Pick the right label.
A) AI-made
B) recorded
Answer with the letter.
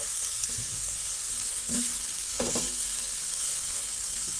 A